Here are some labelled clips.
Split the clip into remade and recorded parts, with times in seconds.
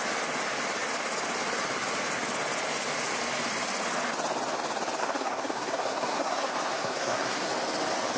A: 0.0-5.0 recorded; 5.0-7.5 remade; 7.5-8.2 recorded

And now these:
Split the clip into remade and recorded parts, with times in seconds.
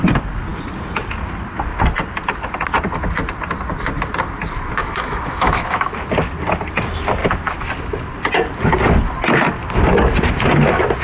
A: 0.0-4.8 recorded; 4.8-6.0 remade; 6.0-11.0 recorded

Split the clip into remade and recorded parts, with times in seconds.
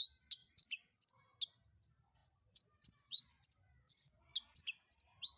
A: 0.0-0.4 recorded; 0.4-1.2 remade; 1.2-2.2 recorded; 2.2-3.2 remade; 3.2-5.4 recorded